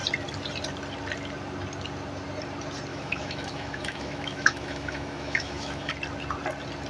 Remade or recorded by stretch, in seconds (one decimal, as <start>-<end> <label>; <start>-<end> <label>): 0.0-2.9 recorded; 2.9-5.9 remade; 5.9-6.9 recorded